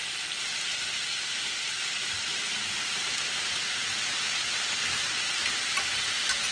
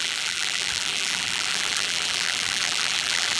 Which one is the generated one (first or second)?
second